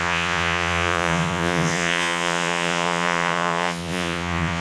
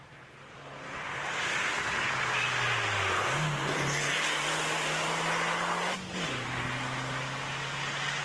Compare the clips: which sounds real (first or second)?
second